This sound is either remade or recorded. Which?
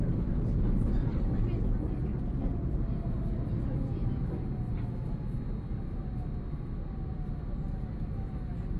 recorded